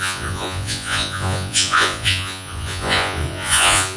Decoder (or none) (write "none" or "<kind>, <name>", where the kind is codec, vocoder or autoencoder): vocoder, Vocos